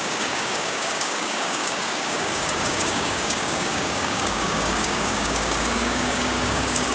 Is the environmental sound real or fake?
fake